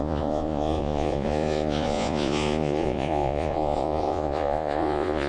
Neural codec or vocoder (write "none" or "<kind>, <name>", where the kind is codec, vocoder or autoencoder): vocoder, Vocos